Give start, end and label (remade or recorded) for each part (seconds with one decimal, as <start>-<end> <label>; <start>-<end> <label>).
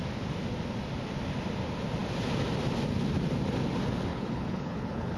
0.0-4.1 recorded; 4.1-5.2 remade